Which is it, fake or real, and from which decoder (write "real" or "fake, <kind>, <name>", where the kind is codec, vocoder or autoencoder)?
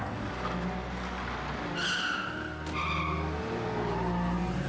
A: real